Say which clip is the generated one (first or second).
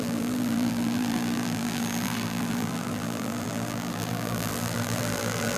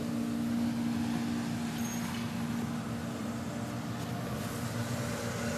first